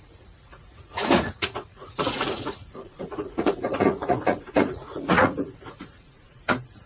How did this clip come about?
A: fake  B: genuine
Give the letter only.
A